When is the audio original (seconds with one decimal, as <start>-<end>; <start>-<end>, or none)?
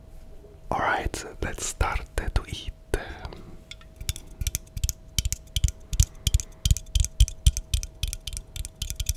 0.0-9.2